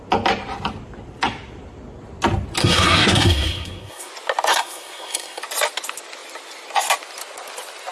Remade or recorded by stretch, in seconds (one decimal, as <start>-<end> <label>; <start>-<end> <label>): 0.0-2.6 recorded; 2.6-4.1 remade; 4.1-4.5 recorded; 4.5-5.4 remade; 5.4-7.9 recorded